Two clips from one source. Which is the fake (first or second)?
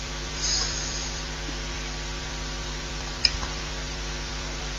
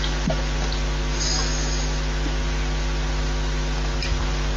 first